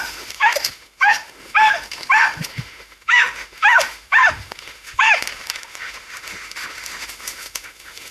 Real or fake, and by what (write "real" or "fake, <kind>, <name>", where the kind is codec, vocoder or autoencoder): fake, autoencoder, DAC-VAE